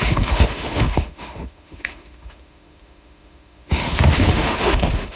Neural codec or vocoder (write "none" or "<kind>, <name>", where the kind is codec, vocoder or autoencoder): autoencoder, DAC-VAE